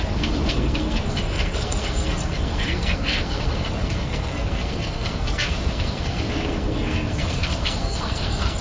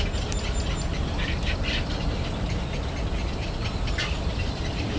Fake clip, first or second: first